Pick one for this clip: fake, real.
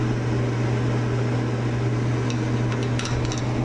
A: real